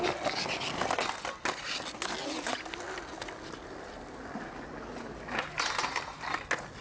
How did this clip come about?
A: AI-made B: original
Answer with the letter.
B